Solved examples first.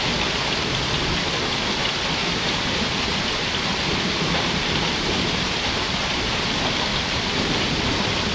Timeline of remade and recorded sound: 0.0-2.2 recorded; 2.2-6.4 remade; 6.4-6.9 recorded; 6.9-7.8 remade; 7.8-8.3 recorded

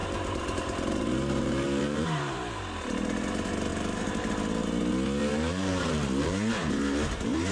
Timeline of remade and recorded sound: 0.0-2.6 remade; 2.6-3.7 recorded; 3.7-4.3 remade; 4.3-5.2 recorded; 5.2-7.5 remade

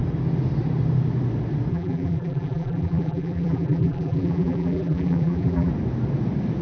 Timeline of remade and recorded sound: 0.0-1.7 recorded; 1.7-5.7 remade; 5.7-6.6 recorded